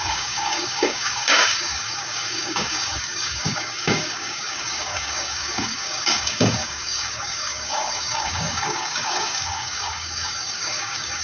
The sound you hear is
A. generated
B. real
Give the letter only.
A